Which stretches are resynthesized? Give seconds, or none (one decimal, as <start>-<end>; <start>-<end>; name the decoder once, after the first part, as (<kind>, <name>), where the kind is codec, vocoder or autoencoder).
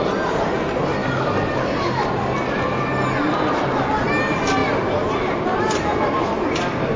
1.0-2.2 (vocoder, BigVGAN v2)